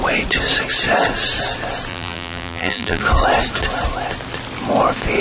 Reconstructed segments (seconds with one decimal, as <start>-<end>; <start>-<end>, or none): 1.9-3.0